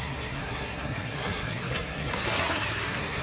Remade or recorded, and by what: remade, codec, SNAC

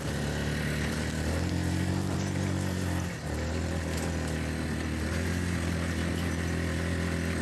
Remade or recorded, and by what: recorded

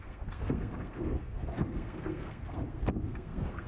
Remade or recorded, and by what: remade, codec, SNAC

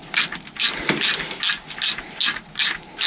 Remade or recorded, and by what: recorded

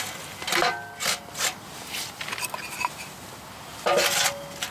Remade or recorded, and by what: recorded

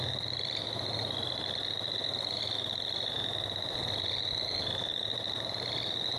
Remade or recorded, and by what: recorded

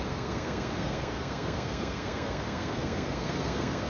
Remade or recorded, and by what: remade, codec, SNAC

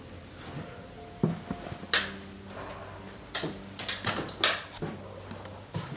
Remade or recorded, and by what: recorded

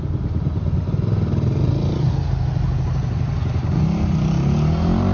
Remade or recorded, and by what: recorded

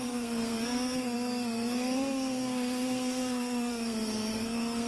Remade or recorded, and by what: remade, codec, SNAC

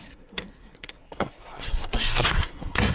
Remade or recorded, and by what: remade, codec, SNAC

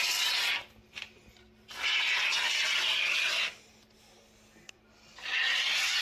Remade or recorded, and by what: recorded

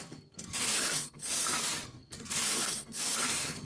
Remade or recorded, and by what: remade, codec, SNAC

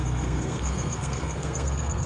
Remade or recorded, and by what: remade, codec, SNAC